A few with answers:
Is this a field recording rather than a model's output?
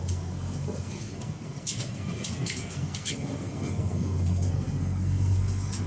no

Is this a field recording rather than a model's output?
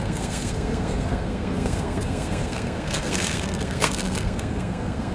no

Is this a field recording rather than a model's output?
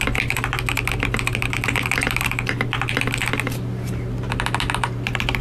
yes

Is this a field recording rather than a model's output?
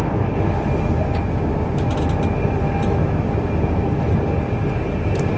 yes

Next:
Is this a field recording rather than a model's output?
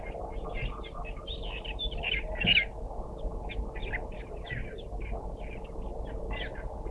yes